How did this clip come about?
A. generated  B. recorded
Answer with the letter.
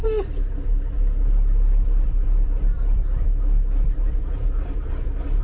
A